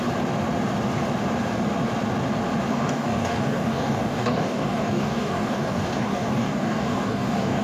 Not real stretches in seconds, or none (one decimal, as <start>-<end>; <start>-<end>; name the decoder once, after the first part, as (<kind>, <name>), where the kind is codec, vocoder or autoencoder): 2.7-7.6 (codec, DAC)